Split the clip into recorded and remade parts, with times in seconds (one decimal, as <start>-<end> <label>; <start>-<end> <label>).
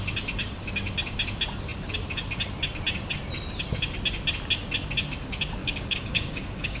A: 0.0-5.6 recorded; 5.6-6.8 remade